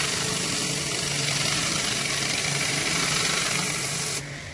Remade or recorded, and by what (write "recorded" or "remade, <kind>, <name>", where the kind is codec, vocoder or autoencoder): recorded